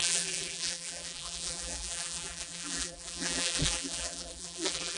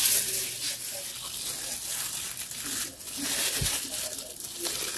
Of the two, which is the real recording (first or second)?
second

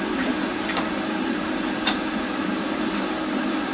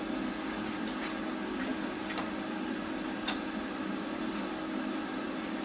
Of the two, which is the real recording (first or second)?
second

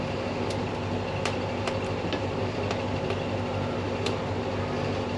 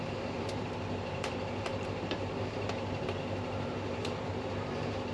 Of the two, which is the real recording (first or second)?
first